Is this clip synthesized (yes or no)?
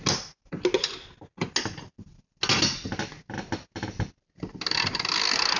no